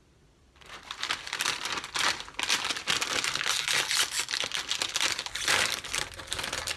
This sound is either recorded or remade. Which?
recorded